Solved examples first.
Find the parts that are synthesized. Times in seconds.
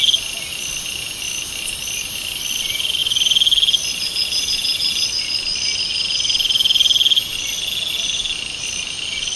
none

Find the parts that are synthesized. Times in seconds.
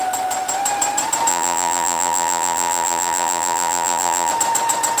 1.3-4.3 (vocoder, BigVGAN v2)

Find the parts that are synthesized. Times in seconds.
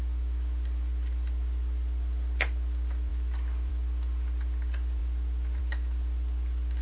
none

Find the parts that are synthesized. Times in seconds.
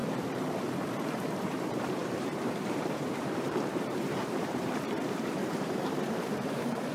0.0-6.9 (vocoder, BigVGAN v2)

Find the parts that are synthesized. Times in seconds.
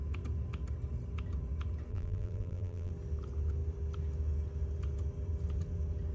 1.9-2.9 (vocoder, BigVGAN v2)